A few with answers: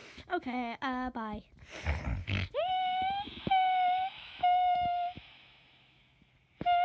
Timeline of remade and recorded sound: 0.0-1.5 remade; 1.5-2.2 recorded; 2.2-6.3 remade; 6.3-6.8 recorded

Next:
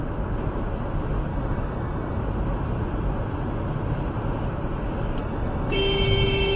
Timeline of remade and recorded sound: 0.0-1.3 recorded; 1.3-2.2 remade; 2.2-5.2 recorded; 5.2-6.6 remade

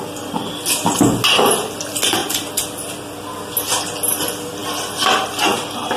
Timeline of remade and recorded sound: 0.0-6.0 recorded

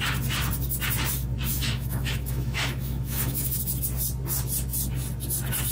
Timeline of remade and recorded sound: 0.0-1.5 recorded; 1.5-3.6 remade; 3.6-5.7 recorded

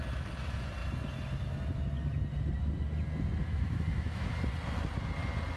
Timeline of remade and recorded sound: 0.0-3.4 recorded; 3.4-4.4 remade; 4.4-5.6 recorded